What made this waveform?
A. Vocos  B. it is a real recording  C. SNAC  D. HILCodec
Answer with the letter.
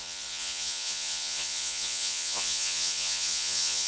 A